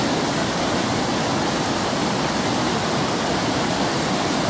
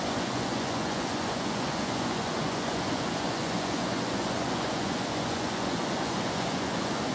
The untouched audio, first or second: first